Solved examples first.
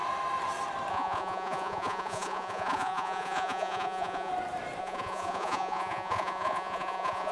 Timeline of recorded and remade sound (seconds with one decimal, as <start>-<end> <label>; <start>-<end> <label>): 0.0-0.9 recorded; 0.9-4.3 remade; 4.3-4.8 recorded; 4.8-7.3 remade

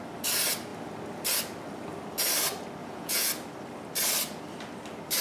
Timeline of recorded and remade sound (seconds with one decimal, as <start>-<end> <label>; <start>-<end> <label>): 0.0-2.8 recorded; 2.8-3.3 remade; 3.3-5.2 recorded

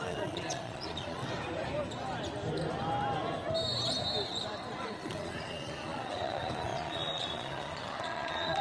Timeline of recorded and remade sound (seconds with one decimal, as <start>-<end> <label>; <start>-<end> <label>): 0.0-1.2 remade; 1.2-4.8 recorded; 4.8-8.6 remade

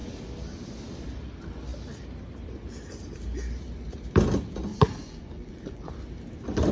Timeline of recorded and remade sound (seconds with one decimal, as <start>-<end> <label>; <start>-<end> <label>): 0.0-4.7 recorded; 4.7-5.9 remade; 5.9-6.7 recorded